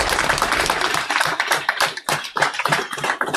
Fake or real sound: fake